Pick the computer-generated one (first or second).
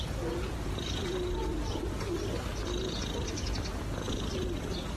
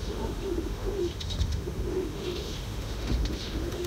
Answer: second